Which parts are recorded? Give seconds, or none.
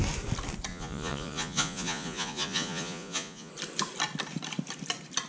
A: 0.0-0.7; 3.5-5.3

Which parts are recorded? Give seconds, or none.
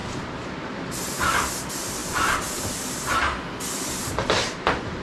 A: 1.5-5.0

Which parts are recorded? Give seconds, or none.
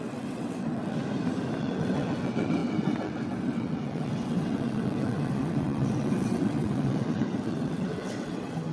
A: 1.0-1.6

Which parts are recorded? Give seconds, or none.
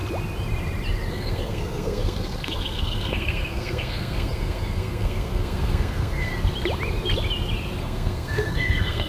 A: 0.0-1.1; 6.3-7.8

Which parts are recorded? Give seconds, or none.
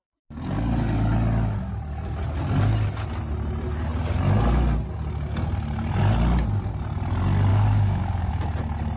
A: 0.0-7.5; 8.3-9.0